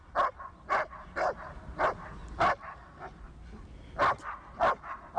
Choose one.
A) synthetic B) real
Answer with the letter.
B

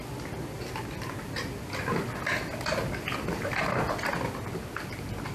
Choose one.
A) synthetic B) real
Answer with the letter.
B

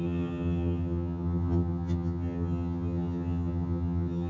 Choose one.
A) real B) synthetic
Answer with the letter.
B